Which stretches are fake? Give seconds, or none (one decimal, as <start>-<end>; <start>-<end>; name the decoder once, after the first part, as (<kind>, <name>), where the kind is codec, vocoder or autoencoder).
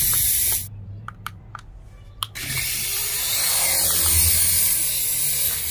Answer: 0.6-1.4 (vocoder, BigVGAN v2); 2.9-3.5